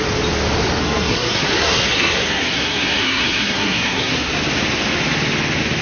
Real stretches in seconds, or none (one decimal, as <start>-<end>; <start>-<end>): 0.0-0.8; 4.3-5.8